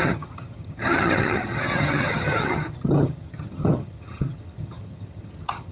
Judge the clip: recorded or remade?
remade